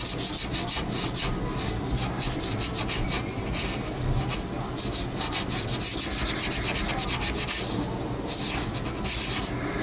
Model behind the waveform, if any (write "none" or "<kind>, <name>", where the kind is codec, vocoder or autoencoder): none